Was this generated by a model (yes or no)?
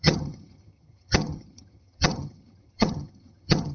yes